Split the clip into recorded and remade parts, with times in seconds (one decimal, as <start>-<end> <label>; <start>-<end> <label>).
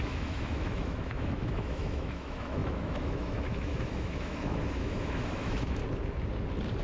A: 0.0-5.8 remade; 5.8-6.8 recorded